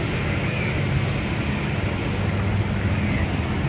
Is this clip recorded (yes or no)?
yes